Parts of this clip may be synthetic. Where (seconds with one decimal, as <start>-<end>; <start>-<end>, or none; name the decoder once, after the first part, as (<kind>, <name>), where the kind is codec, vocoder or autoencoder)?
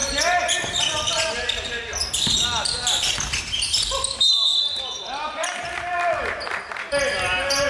none